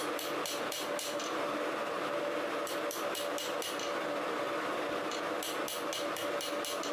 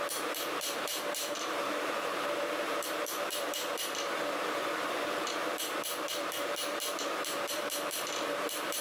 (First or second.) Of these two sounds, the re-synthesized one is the second